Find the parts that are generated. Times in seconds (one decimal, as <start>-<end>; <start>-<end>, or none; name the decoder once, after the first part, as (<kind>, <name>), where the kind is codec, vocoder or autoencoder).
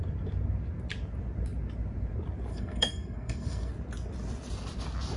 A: 2.5-3.7 (codec, SNAC)